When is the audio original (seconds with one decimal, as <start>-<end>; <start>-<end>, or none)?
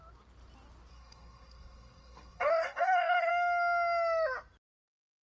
0.0-0.9; 3.3-5.2